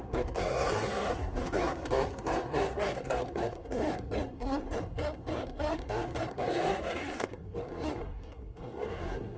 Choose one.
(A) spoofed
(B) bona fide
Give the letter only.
A